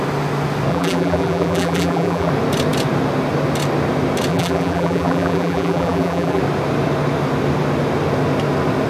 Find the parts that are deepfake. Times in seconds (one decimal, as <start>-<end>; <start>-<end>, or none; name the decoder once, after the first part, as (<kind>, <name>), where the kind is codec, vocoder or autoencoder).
0.7-2.3 (vocoder, BigVGAN v2); 4.3-6.4